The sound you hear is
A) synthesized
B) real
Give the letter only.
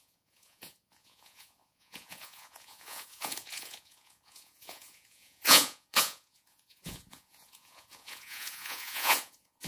A